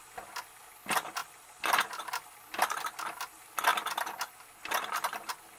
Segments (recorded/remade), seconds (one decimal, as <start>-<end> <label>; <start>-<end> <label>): 0.0-5.6 recorded